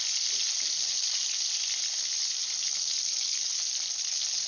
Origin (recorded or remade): recorded